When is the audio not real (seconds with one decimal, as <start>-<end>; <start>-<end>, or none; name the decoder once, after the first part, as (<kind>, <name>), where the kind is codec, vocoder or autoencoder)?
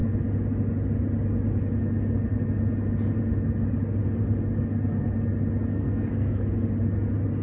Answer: 5.7-6.4 (codec, SNAC)